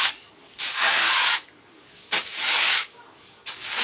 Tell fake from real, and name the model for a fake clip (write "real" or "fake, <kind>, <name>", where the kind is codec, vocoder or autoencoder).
fake, codec, DAC